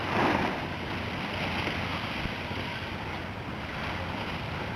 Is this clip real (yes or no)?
yes